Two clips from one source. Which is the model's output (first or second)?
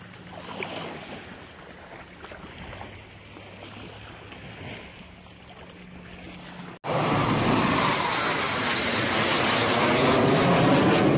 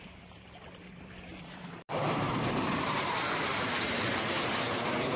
second